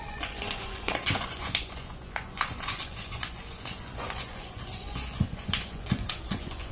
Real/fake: fake